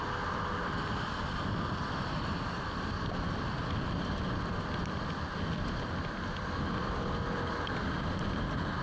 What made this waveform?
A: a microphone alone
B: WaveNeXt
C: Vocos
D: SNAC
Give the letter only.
A